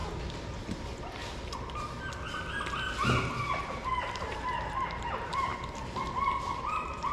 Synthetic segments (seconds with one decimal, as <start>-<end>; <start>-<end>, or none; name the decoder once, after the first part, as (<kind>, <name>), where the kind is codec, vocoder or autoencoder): 3.6-5.5 (vocoder, BigVGAN v2); 6.6-7.1

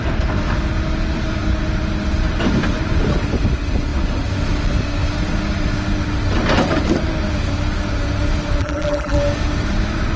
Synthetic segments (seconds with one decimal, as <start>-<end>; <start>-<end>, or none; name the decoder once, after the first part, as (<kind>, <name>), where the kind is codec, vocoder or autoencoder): 8.6-9.2 (vocoder, BigVGAN v2)

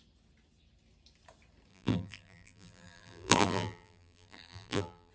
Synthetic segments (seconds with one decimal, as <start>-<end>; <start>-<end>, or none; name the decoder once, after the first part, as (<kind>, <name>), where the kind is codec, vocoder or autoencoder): 1.7-5.1 (vocoder, BigVGAN v2)

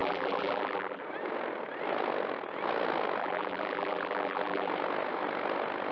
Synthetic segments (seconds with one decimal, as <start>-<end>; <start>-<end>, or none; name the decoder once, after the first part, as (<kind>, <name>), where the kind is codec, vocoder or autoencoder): 0.0-1.0 (vocoder, BigVGAN v2); 3.2-4.7

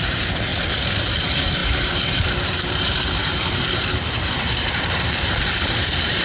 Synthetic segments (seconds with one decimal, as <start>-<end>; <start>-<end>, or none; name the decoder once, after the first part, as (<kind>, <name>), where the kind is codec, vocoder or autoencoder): 0.0-0.5 (vocoder, BigVGAN v2); 1.0-6.2

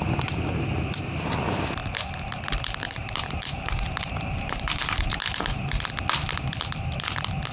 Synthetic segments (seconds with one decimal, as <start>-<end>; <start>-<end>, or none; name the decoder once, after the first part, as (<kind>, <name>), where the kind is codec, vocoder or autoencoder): 1.8-5.8 (vocoder, BigVGAN v2)

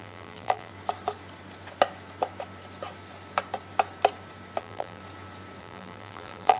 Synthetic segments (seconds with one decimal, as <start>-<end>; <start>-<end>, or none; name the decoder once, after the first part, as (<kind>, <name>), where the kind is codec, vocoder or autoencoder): 0.0-0.7 (vocoder, BigVGAN v2); 4.6-5.0; 5.6-6.6

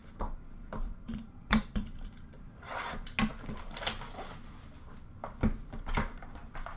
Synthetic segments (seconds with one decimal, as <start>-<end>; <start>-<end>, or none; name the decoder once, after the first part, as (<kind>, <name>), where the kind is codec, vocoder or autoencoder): 0.0-2.7 (vocoder, BigVGAN v2); 3.3-3.8